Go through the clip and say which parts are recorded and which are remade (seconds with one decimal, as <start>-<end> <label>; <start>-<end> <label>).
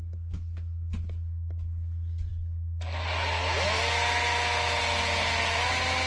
0.0-6.1 recorded